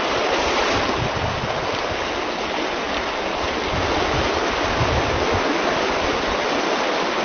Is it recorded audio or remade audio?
recorded